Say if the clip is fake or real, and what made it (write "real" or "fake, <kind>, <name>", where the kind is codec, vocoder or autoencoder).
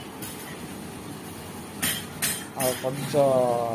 real